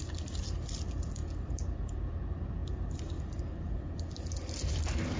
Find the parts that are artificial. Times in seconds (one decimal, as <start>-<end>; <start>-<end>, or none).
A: none